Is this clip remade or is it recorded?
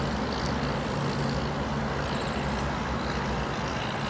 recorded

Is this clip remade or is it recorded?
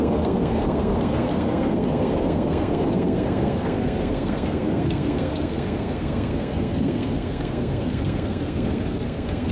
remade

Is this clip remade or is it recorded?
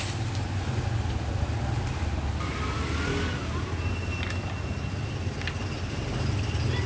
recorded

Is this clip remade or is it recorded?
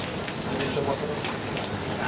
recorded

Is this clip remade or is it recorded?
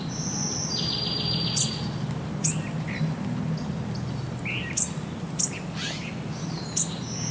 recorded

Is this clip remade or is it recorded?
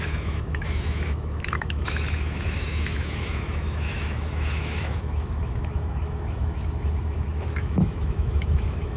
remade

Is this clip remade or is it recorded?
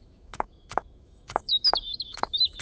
remade